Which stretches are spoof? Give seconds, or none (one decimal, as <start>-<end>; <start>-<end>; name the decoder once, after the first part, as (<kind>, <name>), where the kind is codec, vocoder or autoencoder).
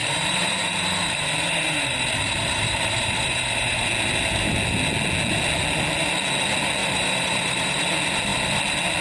0.0-3.9 (vocoder, BigVGAN v2); 6.8-7.8